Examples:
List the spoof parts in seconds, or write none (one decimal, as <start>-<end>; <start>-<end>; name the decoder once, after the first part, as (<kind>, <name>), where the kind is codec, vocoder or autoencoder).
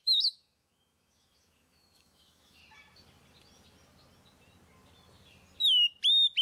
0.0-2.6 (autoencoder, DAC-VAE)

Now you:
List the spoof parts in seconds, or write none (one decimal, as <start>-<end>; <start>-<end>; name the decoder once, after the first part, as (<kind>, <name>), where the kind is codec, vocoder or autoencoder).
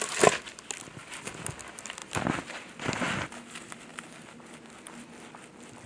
2.0-3.0 (vocoder, BigVGAN v2); 3.9-5.9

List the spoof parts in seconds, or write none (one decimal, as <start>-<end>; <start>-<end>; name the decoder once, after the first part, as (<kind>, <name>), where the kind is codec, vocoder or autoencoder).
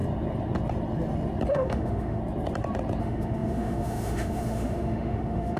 1.5-2.2 (autoencoder, DAC-VAE); 3.0-5.6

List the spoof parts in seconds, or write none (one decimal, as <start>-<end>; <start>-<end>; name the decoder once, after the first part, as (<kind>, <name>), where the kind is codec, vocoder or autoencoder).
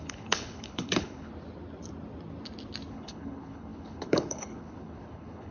0.0-1.3 (codec, HILCodec); 2.9-5.5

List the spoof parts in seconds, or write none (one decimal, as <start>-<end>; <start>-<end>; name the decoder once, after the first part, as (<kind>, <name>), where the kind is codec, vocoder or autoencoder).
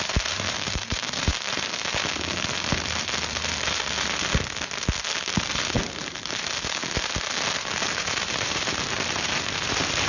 0.0-1.3 (vocoder, BigVGAN v2); 5.5-6.8; 8.0-10.1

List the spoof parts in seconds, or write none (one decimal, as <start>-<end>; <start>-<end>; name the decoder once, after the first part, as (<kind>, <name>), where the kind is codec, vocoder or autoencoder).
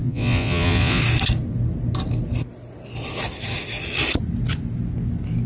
0.0-1.0 (vocoder, Vocos)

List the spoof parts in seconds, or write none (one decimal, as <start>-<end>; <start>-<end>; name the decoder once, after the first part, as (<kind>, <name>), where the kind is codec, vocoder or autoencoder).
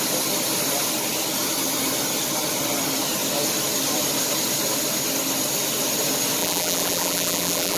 6.4-7.8 (vocoder, BigVGAN v2)